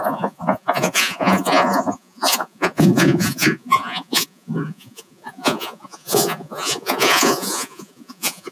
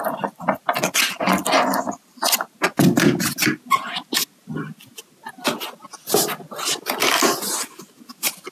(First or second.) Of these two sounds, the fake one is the first